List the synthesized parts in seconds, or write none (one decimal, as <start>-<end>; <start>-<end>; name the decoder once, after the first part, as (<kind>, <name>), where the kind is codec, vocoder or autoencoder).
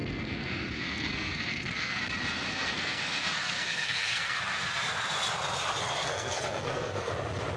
0.0-2.0 (codec, SNAC); 2.5-4.6; 6.0-7.1